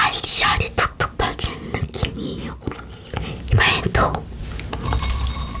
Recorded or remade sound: recorded